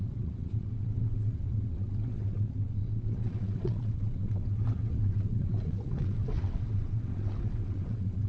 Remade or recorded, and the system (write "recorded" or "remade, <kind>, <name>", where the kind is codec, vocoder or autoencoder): remade, vocoder, WaveNeXt